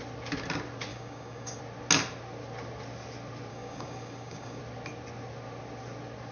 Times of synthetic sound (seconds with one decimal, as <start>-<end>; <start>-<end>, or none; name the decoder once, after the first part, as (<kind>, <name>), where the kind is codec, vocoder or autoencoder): 0.9-1.6 (codec, DAC); 3.5-4.6